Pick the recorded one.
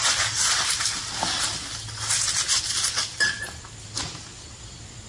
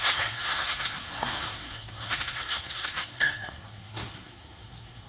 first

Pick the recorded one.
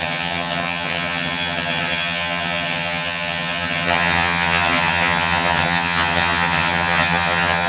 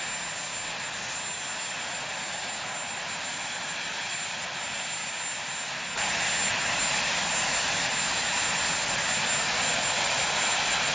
second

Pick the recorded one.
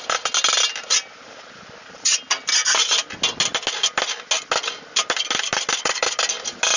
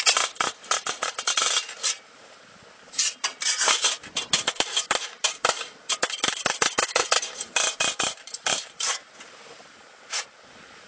first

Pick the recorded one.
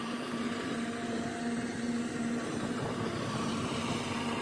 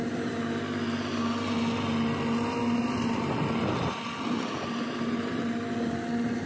second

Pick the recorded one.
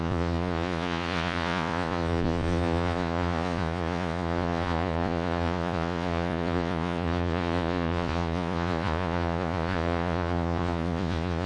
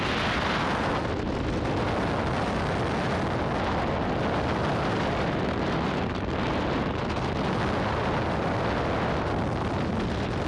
second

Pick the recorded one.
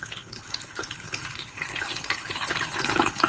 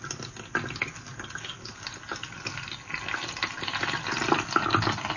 second